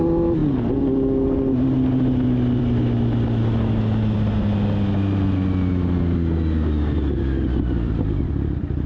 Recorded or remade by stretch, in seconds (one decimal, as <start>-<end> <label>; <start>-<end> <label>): 0.0-8.9 recorded